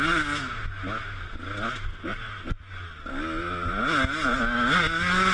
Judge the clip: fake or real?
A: real